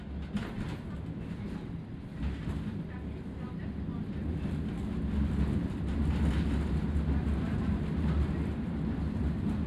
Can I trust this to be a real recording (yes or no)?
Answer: yes